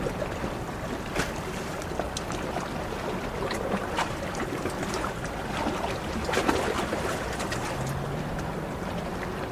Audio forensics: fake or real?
real